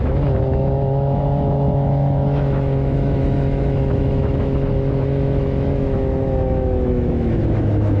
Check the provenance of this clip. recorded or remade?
remade